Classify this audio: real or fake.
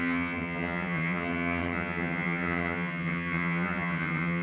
fake